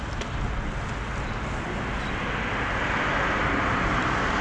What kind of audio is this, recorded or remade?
recorded